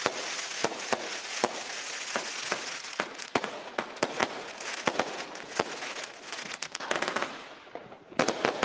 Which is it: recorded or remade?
remade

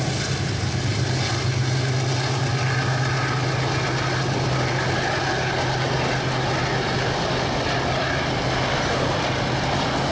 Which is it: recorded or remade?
recorded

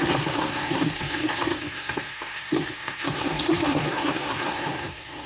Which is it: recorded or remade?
remade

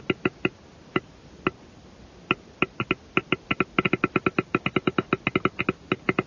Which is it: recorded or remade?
recorded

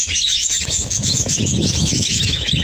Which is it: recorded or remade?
remade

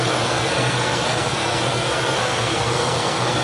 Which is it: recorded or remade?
remade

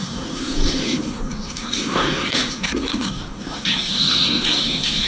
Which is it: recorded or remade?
remade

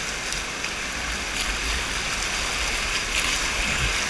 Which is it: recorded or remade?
recorded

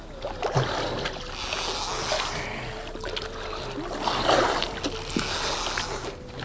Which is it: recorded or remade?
recorded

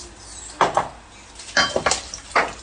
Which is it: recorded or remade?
recorded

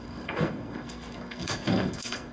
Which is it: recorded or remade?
remade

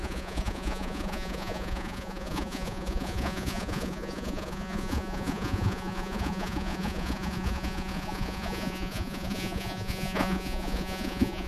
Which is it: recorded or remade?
remade